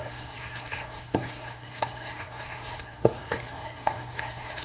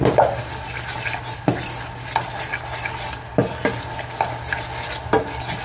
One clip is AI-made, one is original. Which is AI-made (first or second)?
first